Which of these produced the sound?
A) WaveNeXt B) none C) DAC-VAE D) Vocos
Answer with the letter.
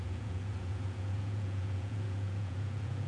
D